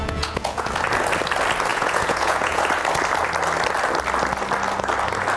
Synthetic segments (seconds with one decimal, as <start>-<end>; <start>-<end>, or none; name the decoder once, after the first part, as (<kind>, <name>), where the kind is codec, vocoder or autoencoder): 0.0-0.7 (vocoder, Vocos); 1.7-2.6